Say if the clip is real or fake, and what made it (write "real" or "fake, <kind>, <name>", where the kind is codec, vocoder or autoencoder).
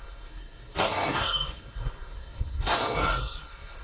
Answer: fake, codec, SNAC